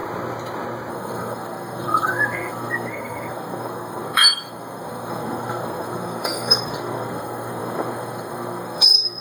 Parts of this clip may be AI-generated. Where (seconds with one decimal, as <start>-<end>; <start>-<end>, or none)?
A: 0.9-9.2